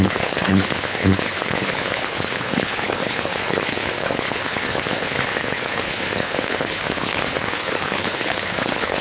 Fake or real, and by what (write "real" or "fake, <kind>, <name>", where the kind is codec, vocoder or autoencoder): fake, codec, HILCodec